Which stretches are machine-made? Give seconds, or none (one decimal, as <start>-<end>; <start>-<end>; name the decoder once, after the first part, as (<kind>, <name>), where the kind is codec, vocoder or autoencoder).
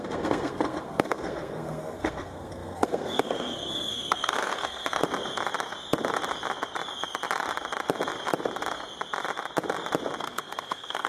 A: 0.0-5.0 (codec, SNAC); 10.2-11.1